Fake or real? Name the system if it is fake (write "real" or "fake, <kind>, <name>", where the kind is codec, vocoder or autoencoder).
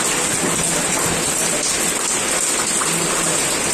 real